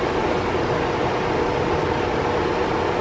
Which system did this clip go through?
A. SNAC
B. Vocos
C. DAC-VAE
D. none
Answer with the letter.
D